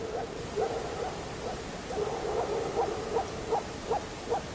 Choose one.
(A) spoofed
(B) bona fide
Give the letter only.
B